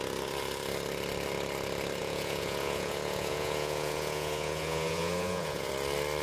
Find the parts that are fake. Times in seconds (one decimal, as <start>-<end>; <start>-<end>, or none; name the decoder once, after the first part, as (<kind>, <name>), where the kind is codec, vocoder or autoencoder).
2.0-5.7 (vocoder, Vocos)